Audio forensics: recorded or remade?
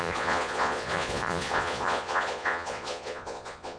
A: remade